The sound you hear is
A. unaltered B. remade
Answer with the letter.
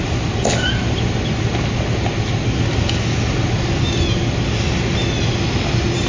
A